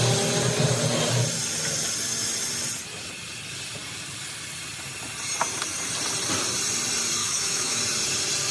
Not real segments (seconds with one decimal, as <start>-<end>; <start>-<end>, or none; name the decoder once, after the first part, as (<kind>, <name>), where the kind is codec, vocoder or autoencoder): 7.2-7.8 (autoencoder, DAC-VAE)